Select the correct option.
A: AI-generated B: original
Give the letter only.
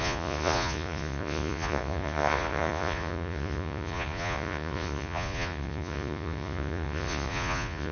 A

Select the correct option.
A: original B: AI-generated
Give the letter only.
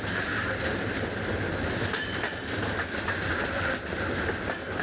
A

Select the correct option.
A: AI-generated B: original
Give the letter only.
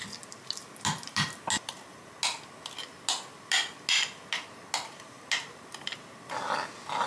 B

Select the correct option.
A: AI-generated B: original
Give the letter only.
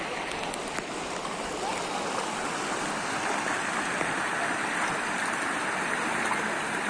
B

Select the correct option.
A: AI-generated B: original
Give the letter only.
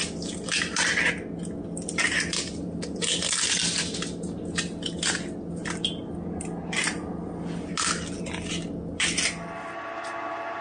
B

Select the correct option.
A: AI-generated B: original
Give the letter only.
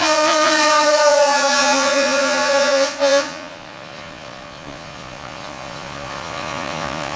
A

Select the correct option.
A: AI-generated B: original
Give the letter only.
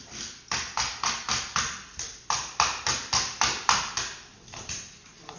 B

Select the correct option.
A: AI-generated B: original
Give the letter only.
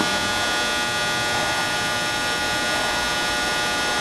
B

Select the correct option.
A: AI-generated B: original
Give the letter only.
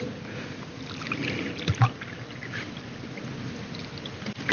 B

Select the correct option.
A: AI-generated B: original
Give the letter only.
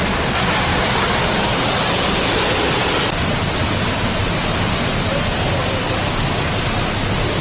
B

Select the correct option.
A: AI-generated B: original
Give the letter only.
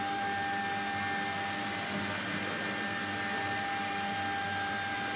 B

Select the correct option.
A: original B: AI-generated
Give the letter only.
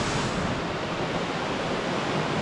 A